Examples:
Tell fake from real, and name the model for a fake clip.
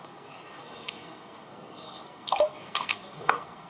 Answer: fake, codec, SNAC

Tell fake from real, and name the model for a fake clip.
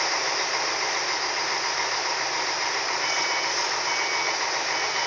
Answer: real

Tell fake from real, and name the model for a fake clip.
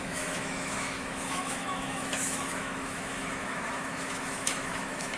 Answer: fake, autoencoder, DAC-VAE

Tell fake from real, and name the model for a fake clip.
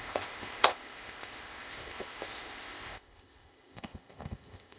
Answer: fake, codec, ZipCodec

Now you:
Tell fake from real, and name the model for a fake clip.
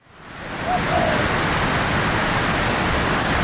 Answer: real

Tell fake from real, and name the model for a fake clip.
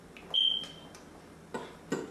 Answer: real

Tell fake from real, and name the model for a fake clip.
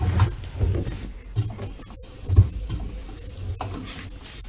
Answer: real